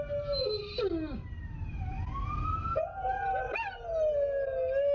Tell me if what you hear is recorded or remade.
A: recorded